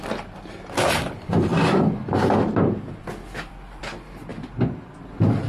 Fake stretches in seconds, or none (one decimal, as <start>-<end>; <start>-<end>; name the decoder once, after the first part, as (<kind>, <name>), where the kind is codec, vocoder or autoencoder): none